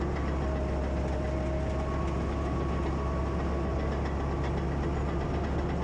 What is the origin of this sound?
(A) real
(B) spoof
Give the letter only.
A